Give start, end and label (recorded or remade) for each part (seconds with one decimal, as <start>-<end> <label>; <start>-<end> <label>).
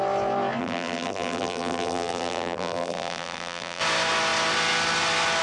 0.0-0.6 recorded; 0.6-3.8 remade; 3.8-5.4 recorded